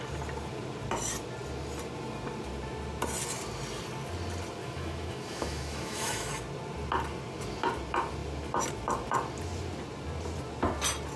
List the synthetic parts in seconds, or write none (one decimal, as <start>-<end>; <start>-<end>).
4.6-6.3